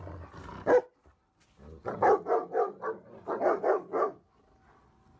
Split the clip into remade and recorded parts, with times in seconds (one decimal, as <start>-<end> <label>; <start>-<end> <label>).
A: 0.0-5.2 recorded